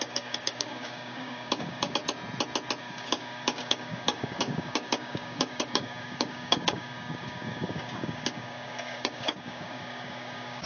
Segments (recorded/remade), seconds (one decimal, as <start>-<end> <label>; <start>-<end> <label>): 0.0-2.0 remade; 2.0-2.8 recorded; 2.8-10.7 remade

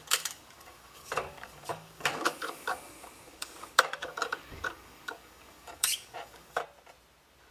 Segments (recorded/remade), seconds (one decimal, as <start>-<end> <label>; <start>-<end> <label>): 0.0-6.6 remade; 6.6-7.5 recorded

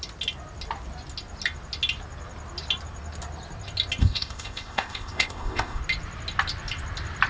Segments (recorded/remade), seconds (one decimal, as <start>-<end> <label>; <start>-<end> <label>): 0.0-4.0 recorded; 4.0-5.8 remade; 5.8-7.3 recorded

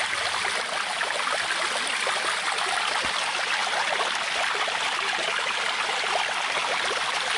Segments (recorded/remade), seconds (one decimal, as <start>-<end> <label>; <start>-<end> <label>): 0.0-7.4 recorded

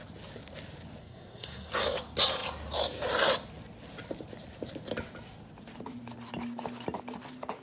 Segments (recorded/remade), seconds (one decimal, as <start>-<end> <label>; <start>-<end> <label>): 0.0-1.0 recorded; 1.0-1.7 remade; 1.7-7.6 recorded

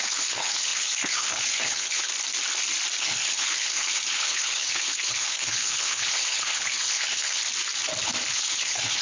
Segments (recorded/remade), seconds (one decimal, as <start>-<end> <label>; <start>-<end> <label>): 0.0-2.1 remade; 2.1-3.0 recorded; 3.0-7.4 remade; 7.4-8.3 recorded; 8.3-9.0 remade

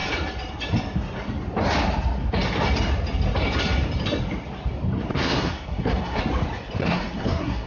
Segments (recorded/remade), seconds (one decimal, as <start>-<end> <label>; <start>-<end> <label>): 0.0-5.1 recorded; 5.1-6.2 remade; 6.2-6.8 recorded; 6.8-7.7 remade

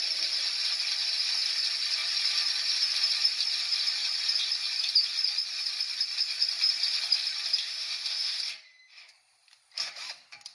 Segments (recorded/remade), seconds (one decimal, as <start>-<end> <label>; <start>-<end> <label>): 0.0-7.6 recorded; 7.6-8.4 remade; 8.4-10.5 recorded